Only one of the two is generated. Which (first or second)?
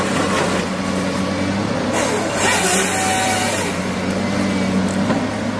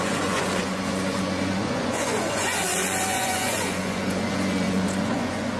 second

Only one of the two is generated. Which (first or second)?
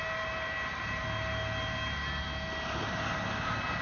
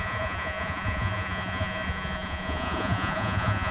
second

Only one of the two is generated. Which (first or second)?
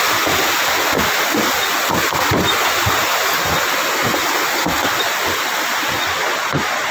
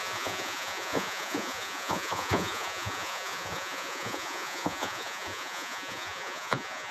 second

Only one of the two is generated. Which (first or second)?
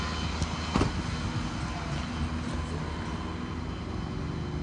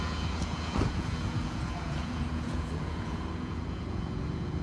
second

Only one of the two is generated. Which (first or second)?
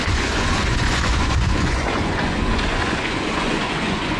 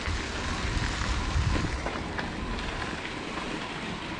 first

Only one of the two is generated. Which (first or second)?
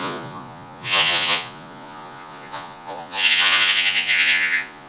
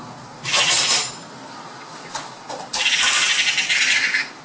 first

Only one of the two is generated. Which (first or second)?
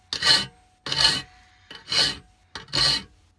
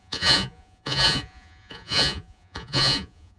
second